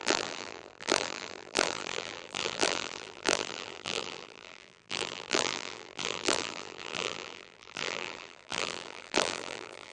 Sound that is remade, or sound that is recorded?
remade